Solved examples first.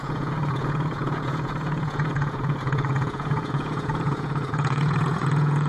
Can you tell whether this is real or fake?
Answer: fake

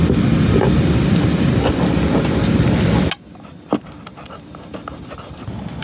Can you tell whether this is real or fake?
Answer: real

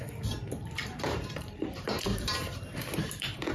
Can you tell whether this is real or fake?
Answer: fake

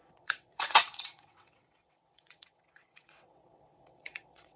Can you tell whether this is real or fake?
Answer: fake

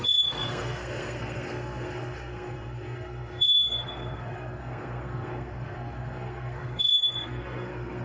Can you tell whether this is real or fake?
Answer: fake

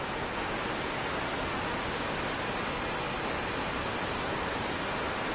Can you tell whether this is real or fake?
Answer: real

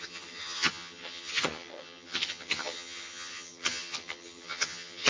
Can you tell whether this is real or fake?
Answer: fake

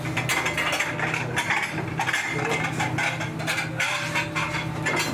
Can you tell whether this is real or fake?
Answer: real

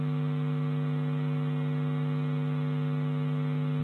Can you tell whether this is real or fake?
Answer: real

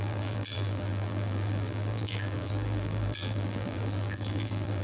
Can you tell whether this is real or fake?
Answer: fake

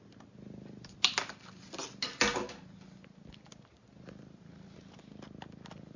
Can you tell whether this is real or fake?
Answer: real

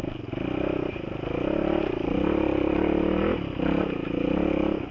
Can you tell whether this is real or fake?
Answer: real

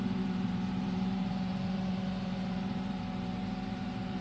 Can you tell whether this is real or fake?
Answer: fake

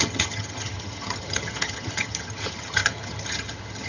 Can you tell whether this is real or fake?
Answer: fake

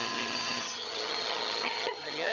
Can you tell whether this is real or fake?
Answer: fake